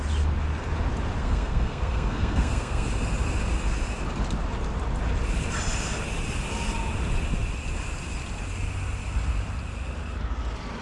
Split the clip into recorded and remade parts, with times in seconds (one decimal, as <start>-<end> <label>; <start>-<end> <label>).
0.0-1.2 recorded; 1.2-2.9 remade; 2.9-10.8 recorded

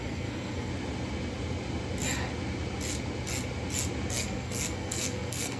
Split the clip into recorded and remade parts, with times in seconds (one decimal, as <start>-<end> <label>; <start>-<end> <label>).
0.0-0.7 remade; 0.7-4.1 recorded; 4.1-5.6 remade

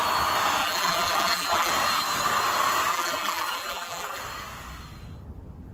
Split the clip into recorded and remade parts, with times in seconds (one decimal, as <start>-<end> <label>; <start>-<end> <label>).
0.0-0.6 recorded; 0.6-1.7 remade; 1.7-2.9 recorded; 2.9-4.2 remade; 4.2-5.7 recorded